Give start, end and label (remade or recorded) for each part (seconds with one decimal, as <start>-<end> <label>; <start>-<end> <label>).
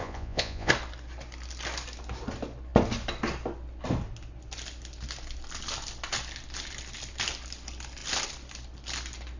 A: 0.0-0.7 remade; 0.7-9.4 recorded